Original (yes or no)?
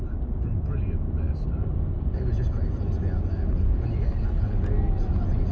yes